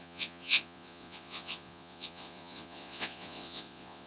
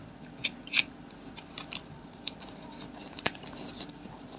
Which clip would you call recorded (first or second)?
second